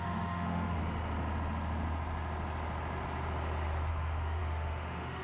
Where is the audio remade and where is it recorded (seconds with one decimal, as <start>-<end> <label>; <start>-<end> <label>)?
0.0-0.8 remade; 0.8-3.9 recorded; 3.9-5.2 remade